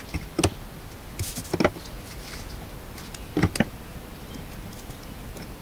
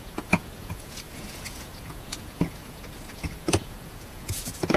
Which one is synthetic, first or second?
second